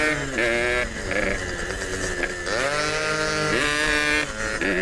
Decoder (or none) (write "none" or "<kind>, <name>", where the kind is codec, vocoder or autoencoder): none